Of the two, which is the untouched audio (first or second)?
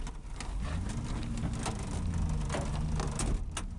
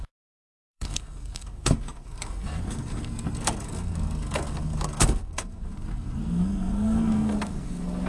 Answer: first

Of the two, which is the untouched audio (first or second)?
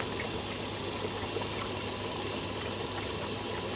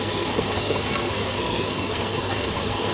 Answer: first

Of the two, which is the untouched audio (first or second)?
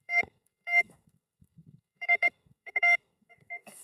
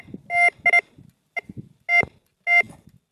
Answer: second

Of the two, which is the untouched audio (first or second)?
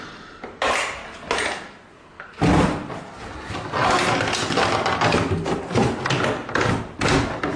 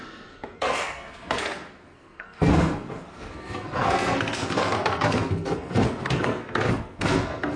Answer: first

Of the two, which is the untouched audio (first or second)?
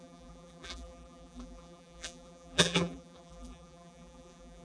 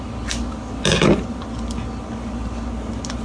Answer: second